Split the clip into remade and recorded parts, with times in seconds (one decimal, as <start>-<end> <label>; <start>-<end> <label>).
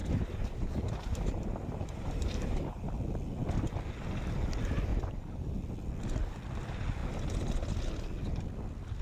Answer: 0.0-2.9 remade; 2.9-4.9 recorded; 4.9-5.5 remade; 5.5-9.0 recorded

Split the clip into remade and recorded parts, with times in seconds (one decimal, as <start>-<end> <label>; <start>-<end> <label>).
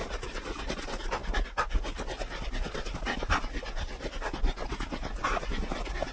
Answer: 0.0-0.7 remade; 0.7-6.1 recorded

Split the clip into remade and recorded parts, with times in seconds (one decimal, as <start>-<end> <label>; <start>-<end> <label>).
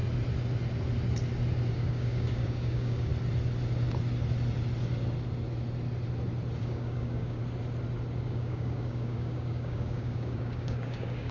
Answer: 0.0-1.7 recorded; 1.7-3.1 remade; 3.1-6.6 recorded; 6.6-7.4 remade; 7.4-8.2 recorded; 8.2-11.3 remade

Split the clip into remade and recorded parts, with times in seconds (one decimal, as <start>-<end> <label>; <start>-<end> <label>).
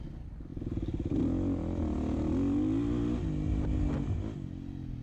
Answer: 0.0-5.0 recorded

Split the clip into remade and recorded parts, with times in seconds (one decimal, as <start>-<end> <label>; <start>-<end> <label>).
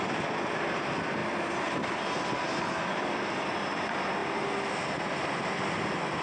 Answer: 0.0-6.2 recorded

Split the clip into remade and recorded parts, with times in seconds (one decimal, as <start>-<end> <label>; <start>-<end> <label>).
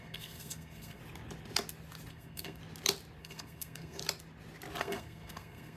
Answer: 0.0-1.0 remade; 1.0-2.1 recorded; 2.1-2.6 remade; 2.6-3.2 recorded; 3.2-4.0 remade; 4.0-4.8 recorded; 4.8-5.8 remade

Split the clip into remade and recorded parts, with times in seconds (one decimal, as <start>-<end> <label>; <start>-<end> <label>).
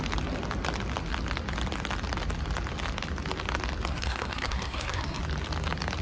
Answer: 0.0-3.9 recorded; 3.9-5.2 remade; 5.2-6.0 recorded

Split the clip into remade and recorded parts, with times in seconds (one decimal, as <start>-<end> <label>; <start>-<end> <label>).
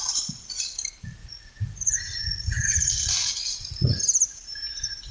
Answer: 0.0-1.2 recorded; 1.2-4.0 remade; 4.0-5.1 recorded